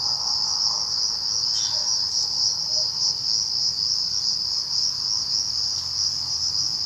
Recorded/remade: recorded